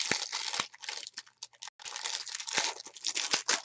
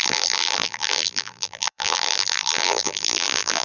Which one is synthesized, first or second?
second